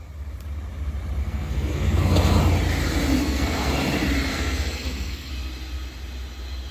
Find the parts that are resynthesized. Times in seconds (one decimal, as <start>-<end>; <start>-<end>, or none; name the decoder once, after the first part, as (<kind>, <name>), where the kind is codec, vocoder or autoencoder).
1.2-2.4 (codec, SNAC); 3.2-3.7; 4.3-5.3